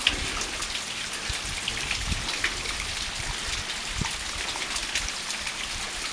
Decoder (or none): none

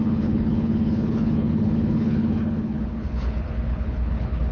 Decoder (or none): codec, HILCodec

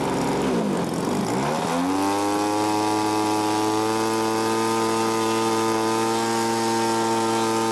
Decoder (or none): none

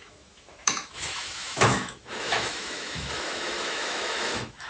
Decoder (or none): autoencoder, DAC-VAE